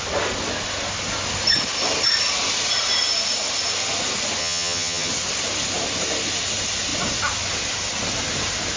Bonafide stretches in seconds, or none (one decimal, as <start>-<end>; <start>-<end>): 0.0-4.4; 5.1-8.8

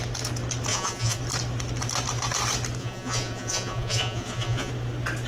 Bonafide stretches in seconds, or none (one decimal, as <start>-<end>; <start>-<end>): 0.0-0.7; 1.2-2.8; 4.7-5.3

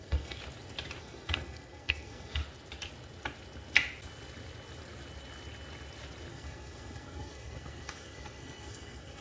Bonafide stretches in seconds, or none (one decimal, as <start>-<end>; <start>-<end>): 0.4-1.0; 2.4-6.3

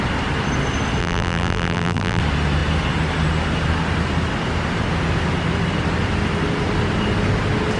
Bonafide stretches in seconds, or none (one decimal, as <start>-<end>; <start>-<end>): 0.0-1.0; 2.2-7.8